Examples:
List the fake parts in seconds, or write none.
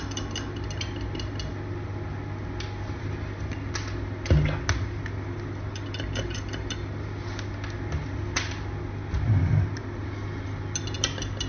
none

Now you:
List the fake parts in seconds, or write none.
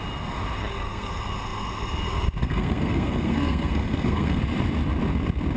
0.6-1.1 (codec, SNAC); 2.4-4.4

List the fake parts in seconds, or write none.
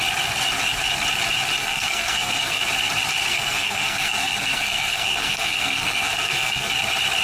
1.6-2.6 (codec, SNAC); 3.3-6.7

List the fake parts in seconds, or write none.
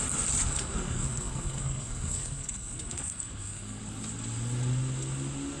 0.4-3.8 (codec, SNAC)